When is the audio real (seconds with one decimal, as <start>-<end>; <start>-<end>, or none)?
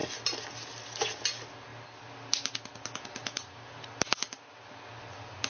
0.0-5.5